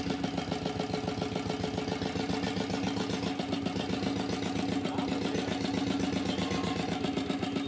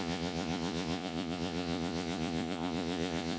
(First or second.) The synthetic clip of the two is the second